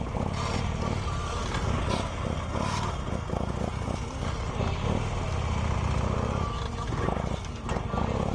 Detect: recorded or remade recorded